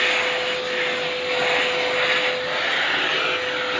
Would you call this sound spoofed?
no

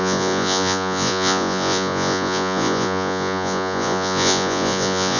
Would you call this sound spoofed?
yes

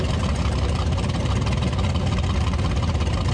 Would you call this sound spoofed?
yes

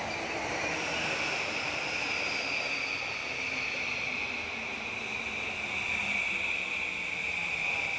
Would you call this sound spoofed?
no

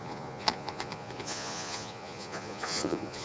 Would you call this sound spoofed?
yes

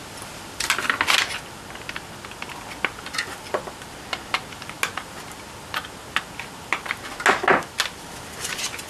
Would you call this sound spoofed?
no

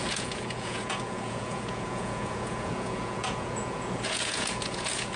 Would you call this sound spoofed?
yes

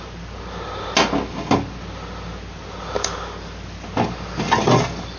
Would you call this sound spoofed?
no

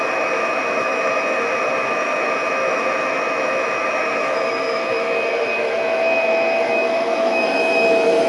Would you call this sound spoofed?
yes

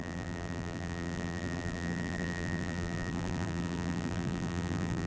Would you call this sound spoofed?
yes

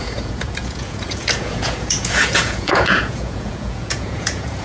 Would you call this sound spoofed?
yes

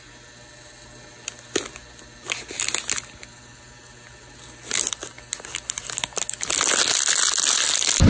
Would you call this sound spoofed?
no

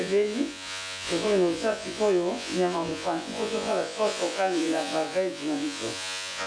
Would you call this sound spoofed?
yes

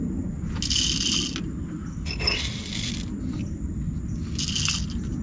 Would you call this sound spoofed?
no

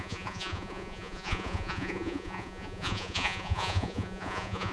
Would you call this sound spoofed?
yes